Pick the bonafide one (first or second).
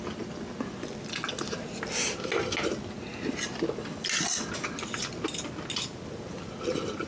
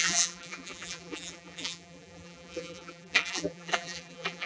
first